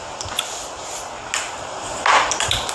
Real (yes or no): yes